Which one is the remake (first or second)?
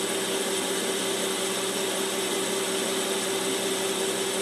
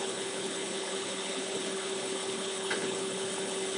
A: second